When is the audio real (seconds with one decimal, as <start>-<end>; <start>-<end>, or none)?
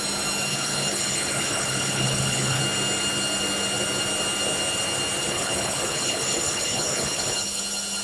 0.0-0.5; 2.6-5.2; 7.6-8.0